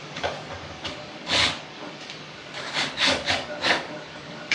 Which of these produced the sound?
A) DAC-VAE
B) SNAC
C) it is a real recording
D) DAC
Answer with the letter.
D